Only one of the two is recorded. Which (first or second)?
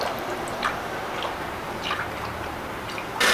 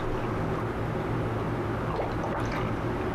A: second